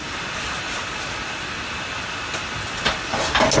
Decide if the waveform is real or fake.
real